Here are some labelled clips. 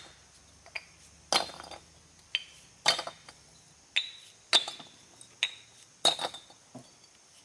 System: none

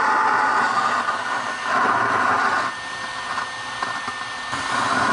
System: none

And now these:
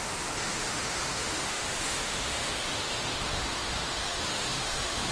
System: autoencoder, DAC-VAE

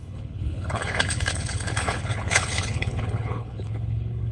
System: codec, HILCodec